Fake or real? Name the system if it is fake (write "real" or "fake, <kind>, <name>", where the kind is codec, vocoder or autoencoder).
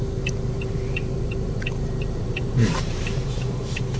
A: fake, vocoder, BigVGAN v2